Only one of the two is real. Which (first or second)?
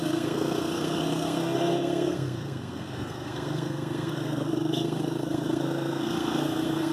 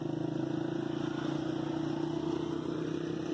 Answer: second